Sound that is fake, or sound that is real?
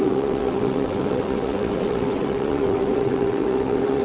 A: fake